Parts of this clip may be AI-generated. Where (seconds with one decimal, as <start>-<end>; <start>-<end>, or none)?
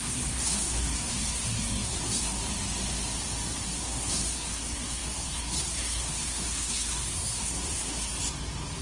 0.0-2.4; 3.6-8.1